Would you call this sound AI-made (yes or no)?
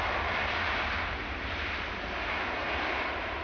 no